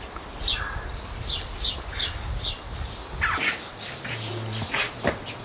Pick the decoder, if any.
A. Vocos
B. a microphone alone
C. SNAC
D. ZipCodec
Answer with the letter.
B